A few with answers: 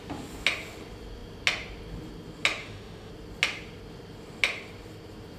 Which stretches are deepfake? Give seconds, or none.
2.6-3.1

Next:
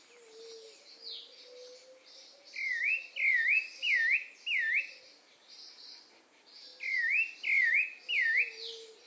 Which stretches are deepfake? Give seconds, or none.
none